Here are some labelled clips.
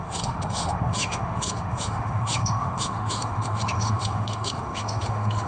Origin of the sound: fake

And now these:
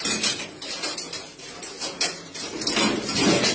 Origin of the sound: real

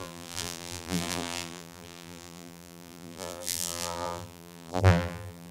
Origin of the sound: fake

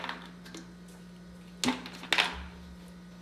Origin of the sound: real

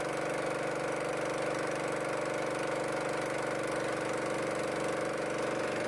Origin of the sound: real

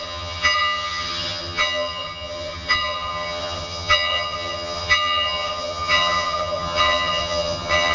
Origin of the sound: fake